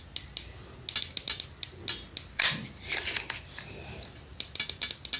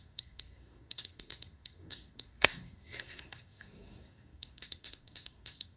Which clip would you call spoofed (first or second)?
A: second